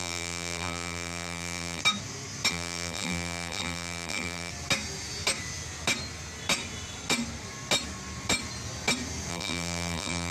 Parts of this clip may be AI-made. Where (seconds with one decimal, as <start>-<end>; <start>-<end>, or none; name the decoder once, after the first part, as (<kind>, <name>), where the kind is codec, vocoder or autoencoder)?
0.0-1.8 (vocoder, BigVGAN v2); 2.5-4.5; 9.3-10.3

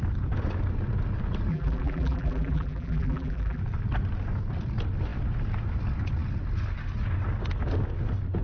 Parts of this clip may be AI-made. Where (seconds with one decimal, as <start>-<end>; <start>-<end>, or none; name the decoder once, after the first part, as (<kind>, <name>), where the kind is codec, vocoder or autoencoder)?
1.5-3.6 (vocoder, BigVGAN v2)

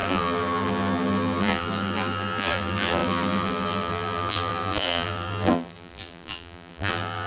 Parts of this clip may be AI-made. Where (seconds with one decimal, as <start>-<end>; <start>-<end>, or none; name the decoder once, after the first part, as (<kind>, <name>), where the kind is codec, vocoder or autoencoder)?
0.0-7.3 (vocoder, BigVGAN v2)

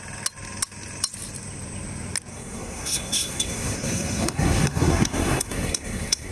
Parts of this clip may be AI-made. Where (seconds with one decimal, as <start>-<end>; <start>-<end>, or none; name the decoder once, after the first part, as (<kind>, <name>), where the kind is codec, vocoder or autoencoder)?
2.3-6.3 (codec, SNAC)

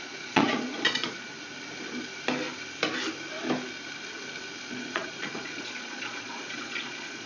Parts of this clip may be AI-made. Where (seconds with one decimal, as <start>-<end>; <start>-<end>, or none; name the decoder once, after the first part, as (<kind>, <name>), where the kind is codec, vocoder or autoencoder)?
0.0-1.3 (vocoder, Vocos); 4.7-7.3

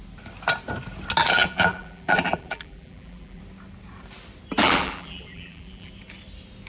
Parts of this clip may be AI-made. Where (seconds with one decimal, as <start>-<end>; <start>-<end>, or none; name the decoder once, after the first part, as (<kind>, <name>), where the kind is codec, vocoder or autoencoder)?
1.2-3.4 (vocoder, BigVGAN v2); 4.6-5.9

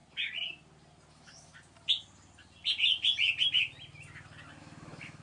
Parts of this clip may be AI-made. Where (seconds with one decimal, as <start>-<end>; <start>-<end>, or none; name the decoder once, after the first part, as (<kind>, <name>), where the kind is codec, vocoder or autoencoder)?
1.1-1.5 (autoencoder, DAC-VAE); 4.6-5.2